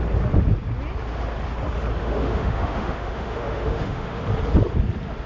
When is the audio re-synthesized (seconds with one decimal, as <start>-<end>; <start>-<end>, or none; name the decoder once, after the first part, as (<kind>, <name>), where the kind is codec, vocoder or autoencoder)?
2.0-4.2 (autoencoder, DAC-VAE)

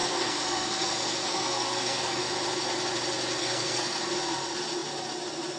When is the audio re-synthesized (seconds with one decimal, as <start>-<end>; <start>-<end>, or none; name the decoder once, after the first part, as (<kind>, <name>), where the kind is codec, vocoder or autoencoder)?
0.0-2.2 (codec, SNAC); 3.4-4.0

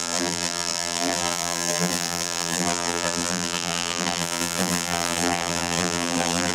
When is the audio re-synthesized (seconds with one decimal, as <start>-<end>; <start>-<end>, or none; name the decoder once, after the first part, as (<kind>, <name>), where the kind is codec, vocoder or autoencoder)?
0.0-6.5 (vocoder, BigVGAN v2)

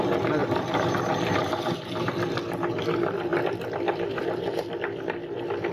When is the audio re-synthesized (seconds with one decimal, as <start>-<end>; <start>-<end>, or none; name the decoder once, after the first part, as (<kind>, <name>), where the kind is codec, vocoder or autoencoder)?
none